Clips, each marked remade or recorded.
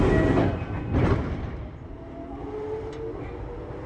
recorded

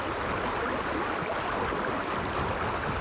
recorded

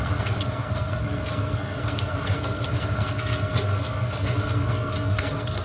remade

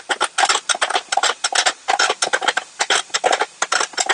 recorded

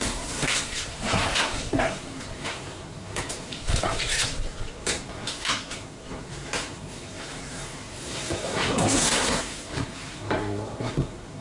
remade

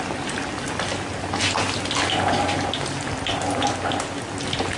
recorded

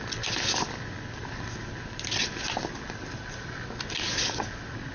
recorded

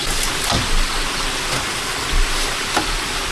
recorded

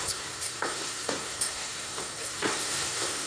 remade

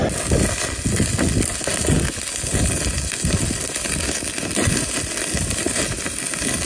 recorded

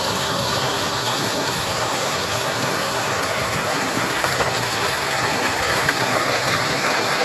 remade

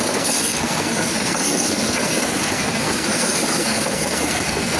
remade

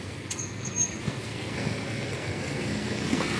remade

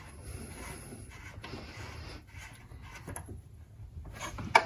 recorded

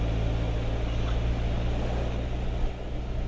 recorded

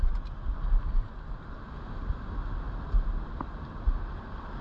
recorded